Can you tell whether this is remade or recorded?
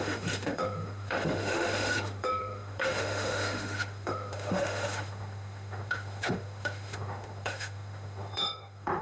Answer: remade